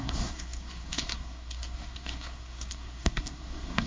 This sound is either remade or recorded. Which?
remade